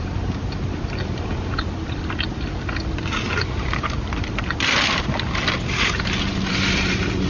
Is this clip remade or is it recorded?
recorded